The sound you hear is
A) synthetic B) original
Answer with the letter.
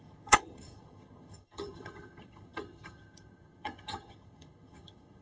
A